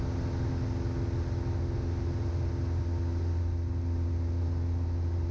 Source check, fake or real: real